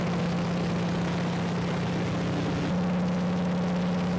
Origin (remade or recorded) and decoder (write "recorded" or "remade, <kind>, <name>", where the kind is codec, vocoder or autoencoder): recorded